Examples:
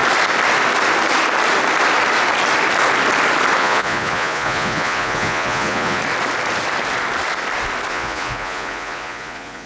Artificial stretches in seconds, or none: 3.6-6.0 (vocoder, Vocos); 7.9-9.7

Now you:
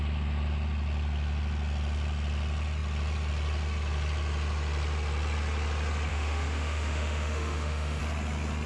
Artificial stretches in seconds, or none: 6.1-8.0 (autoencoder, DAC-VAE)

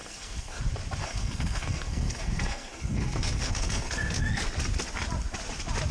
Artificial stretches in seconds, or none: 0.0-0.6 (codec, SNAC); 1.0-4.5

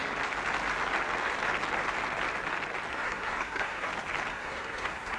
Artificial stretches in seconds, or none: 2.9-3.9 (codec, SNAC); 4.3-5.2

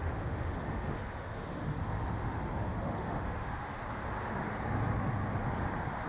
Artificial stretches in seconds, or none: 0.0-3.7 (autoencoder, DAC-VAE)

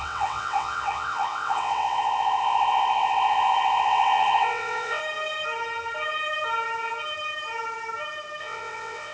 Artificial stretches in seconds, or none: 0.0-5.0 (vocoder, WaveNeXt); 8.4-9.1

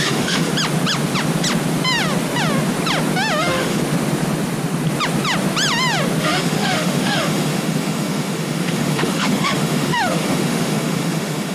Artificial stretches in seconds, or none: 0.0-0.5 (autoencoder, DAC-VAE); 3.4-3.8; 6.2-11.5